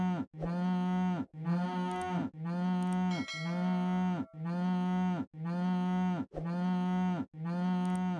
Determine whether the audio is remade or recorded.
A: recorded